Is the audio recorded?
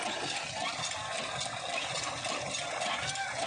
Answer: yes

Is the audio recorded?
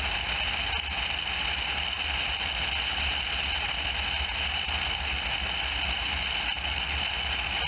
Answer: yes